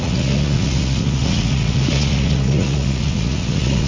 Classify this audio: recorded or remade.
remade